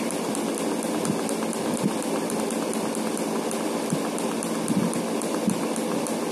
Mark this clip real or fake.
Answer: real